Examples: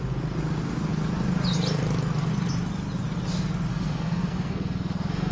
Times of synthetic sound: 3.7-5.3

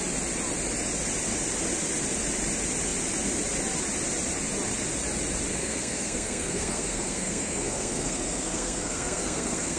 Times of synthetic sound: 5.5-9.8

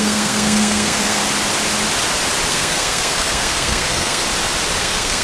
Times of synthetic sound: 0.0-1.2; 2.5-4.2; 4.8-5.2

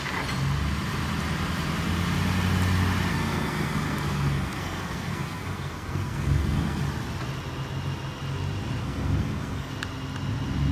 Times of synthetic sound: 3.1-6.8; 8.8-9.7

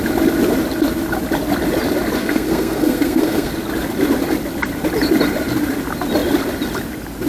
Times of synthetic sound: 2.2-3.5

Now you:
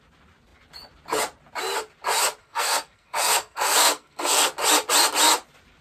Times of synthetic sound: 2.4-4.5